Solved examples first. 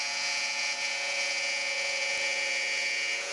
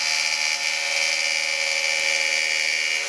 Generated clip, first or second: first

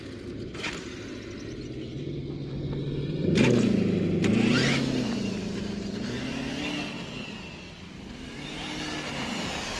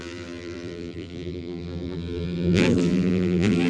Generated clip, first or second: second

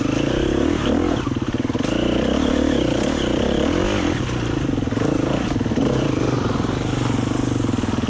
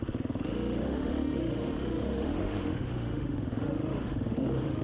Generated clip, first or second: second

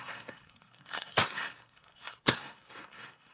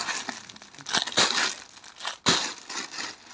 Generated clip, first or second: first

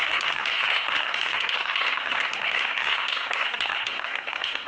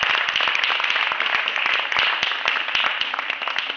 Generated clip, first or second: first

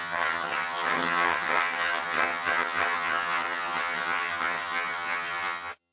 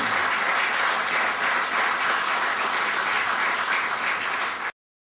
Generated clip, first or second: first